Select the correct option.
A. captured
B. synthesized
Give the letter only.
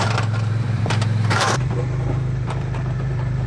B